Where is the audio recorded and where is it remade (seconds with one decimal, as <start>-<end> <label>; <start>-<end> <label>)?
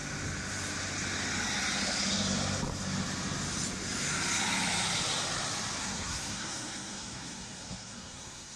0.0-5.8 recorded; 5.8-8.6 remade